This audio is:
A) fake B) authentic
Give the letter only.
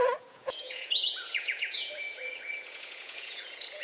A